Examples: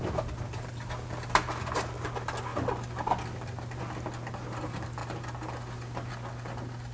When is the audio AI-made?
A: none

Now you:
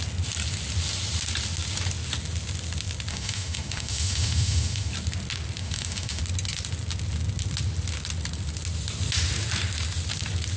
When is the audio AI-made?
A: 3.1-4.9 (autoencoder, DAC-VAE); 5.6-6.2

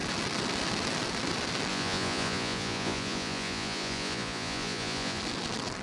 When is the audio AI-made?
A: 1.7-5.2 (vocoder, Vocos)

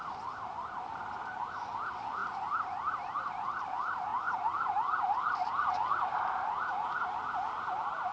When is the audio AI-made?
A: none

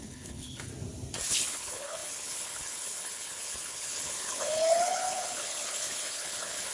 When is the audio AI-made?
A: 0.0-0.7 (codec, HILCodec); 1.3-6.7

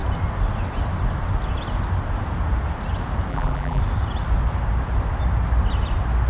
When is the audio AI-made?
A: 3.3-3.8 (vocoder, BigVGAN v2)